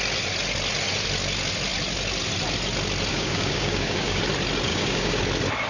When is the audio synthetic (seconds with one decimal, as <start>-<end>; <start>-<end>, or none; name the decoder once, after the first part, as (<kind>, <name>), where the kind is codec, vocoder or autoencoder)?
3.1-4.2 (codec, DAC); 4.7-5.2